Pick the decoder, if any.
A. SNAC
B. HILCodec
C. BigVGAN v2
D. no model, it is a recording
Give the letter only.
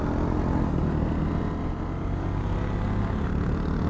D